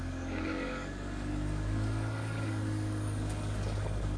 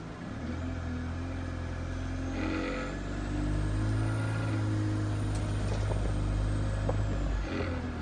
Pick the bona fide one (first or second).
second